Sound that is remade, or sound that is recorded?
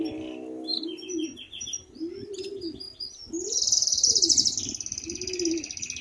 recorded